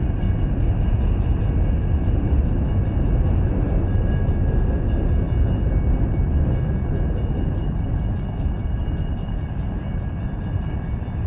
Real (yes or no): yes